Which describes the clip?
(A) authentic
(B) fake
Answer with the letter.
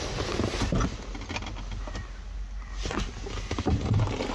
A